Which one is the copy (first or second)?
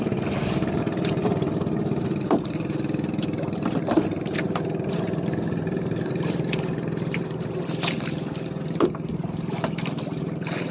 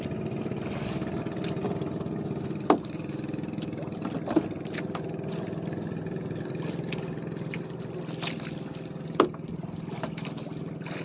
first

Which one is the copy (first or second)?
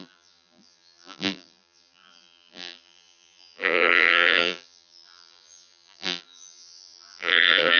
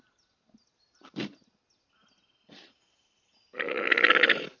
first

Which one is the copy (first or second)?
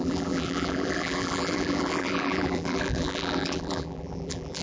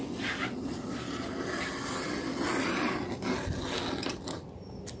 first